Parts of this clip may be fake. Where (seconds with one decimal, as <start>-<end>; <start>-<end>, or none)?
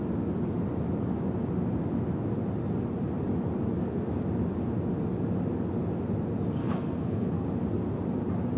6.6-7.5